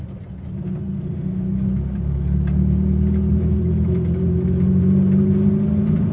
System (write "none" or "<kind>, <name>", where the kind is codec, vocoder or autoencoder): none